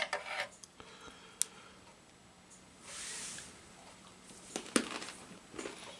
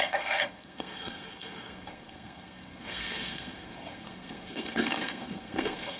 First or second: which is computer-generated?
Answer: second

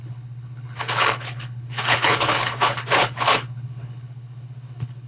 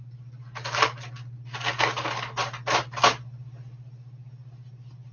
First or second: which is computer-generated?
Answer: first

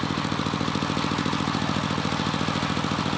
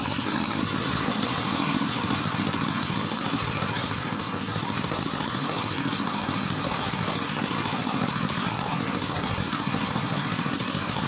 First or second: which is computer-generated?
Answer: second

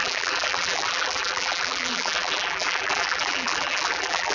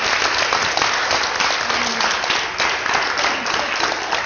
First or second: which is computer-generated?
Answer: first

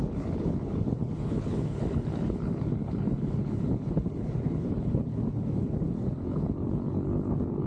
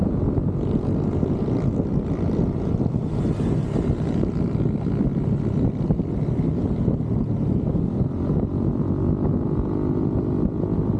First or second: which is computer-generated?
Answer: first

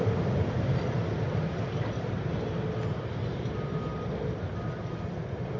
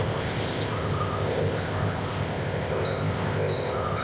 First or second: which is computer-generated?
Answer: second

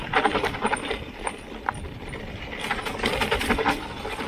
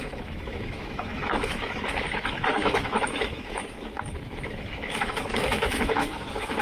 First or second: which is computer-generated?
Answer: second